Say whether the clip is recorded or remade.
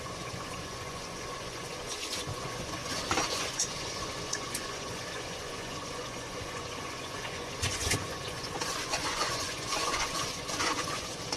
remade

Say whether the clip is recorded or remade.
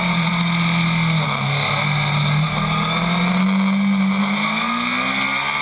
recorded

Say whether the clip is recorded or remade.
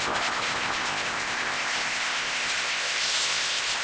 remade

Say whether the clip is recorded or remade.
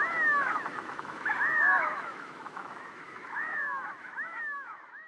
remade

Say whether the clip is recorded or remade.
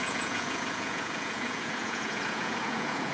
remade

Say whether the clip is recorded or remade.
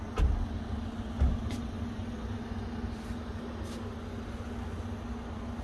recorded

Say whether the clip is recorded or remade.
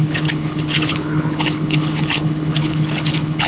remade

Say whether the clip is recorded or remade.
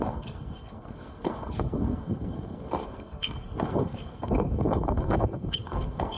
remade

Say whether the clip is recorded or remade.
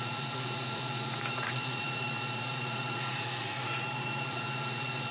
remade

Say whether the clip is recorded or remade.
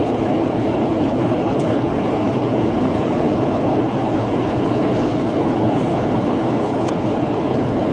remade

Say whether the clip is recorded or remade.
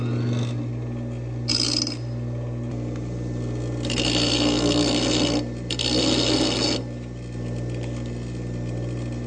recorded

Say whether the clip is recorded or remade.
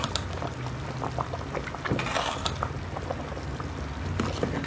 recorded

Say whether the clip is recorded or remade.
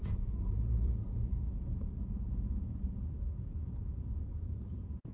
remade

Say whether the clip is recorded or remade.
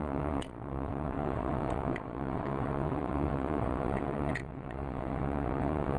remade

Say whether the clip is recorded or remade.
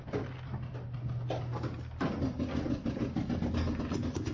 recorded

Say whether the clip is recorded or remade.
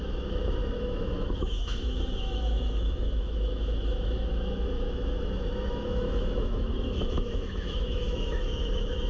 remade